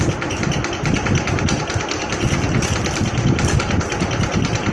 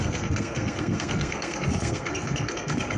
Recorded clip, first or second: first